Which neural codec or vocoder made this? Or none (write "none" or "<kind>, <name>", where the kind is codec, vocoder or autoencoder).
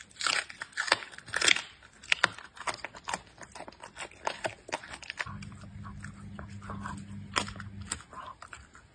none